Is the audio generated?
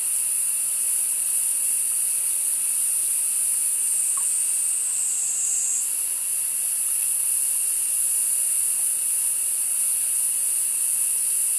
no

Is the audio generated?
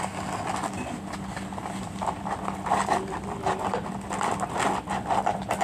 no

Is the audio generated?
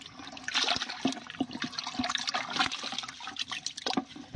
no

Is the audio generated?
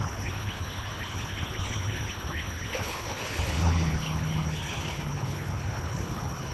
yes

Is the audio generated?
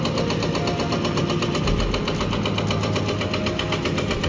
no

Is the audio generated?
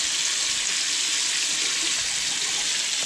no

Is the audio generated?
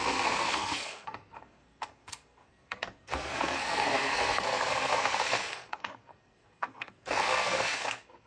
yes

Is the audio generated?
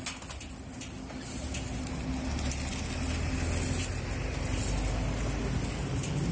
no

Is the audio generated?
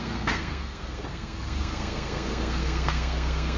yes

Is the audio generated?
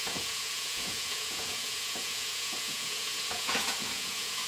yes